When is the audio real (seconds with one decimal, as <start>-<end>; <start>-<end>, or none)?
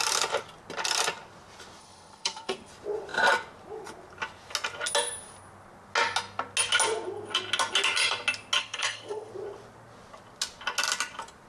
0.0-1.8; 2.7-8.6; 9.3-11.5